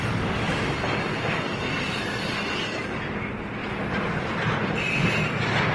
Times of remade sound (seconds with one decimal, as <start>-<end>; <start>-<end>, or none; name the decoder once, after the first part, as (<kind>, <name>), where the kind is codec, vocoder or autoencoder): 3.6-5.1 (vocoder, BigVGAN v2)